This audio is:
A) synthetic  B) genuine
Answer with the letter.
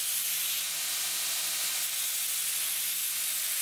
B